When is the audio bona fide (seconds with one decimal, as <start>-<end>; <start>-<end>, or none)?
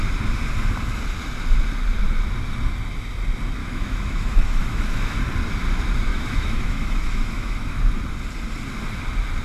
0.0-3.6; 5.2-6.1; 7.8-9.4